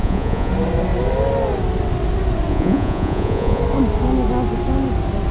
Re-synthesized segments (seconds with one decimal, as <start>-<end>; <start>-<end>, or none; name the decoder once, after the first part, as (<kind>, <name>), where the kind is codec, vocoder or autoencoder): 0.0-0.5 (vocoder, Vocos); 2.5-3.6